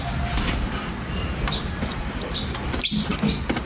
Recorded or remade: recorded